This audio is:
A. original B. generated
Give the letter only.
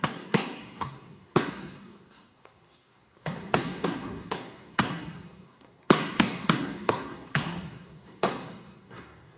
B